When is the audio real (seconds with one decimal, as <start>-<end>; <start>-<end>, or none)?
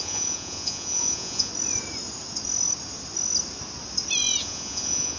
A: 1.5-4.4